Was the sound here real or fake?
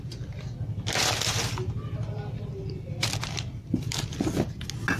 real